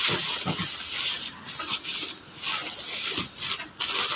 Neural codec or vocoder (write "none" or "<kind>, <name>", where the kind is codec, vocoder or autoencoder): none